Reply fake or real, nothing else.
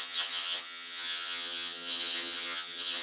fake